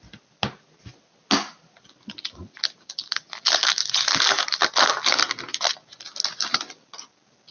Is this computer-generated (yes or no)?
no